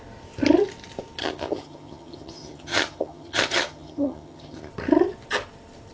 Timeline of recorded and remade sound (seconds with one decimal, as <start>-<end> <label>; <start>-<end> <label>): 0.0-1.2 recorded; 1.2-4.7 remade; 4.7-5.9 recorded